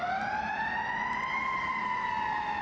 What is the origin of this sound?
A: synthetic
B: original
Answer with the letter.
B